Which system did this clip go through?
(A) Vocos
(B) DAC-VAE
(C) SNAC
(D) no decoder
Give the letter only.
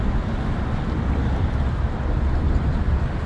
D